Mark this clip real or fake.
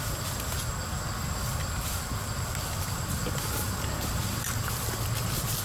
real